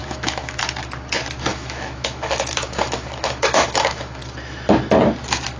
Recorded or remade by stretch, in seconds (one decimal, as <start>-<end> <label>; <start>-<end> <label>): 0.0-0.6 remade; 0.6-1.5 recorded; 1.5-4.2 remade; 4.2-5.6 recorded